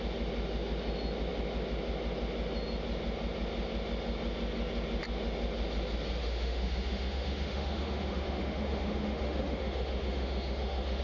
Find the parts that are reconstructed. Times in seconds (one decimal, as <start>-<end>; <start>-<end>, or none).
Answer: 6.2-11.0